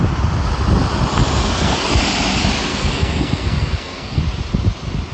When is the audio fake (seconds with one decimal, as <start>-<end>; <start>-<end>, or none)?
1.4-2.0; 2.7-4.2